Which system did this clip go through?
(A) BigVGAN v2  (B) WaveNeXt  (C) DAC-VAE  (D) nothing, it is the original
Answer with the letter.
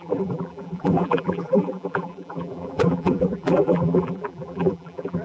A